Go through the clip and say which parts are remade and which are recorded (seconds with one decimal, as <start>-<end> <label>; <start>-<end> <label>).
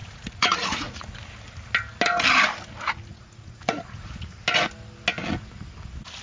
0.0-1.1 remade; 1.1-3.1 recorded; 3.1-4.4 remade; 4.4-6.2 recorded